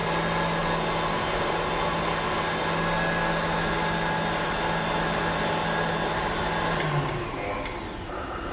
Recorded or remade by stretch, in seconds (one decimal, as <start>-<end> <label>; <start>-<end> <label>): 0.0-8.5 recorded

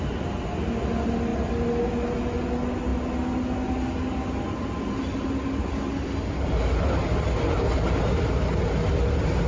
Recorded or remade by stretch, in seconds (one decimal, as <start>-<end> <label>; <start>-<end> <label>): 0.0-9.5 recorded

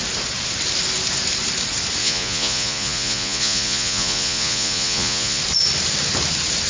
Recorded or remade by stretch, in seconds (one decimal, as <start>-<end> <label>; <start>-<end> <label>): 0.0-2.0 recorded; 2.0-5.4 remade; 5.4-6.7 recorded

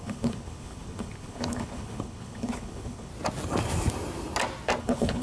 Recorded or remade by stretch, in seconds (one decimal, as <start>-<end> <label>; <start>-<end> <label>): 0.0-3.1 remade; 3.1-4.8 recorded; 4.8-5.2 remade

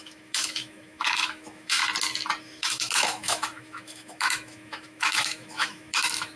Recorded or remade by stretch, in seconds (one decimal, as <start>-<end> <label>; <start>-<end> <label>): 0.0-1.8 remade; 1.8-2.4 recorded; 2.4-6.4 remade